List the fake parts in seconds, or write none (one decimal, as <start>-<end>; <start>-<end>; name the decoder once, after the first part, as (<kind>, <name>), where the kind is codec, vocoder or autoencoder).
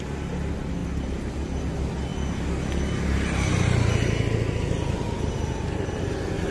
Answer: none